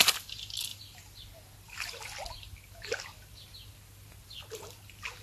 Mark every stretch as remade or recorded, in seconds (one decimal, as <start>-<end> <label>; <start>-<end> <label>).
0.0-5.2 recorded